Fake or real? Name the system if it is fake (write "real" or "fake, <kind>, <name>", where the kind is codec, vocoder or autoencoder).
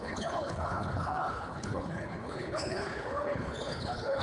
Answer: fake, codec, HILCodec